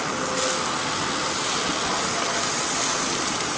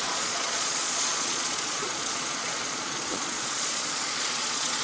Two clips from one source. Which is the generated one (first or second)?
second